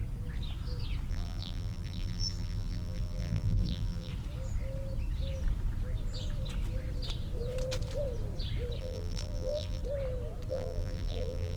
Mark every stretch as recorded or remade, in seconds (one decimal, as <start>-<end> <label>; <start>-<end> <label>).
0.0-1.1 recorded; 1.1-4.1 remade; 4.1-8.8 recorded; 8.8-9.8 remade; 9.8-10.5 recorded; 10.5-11.6 remade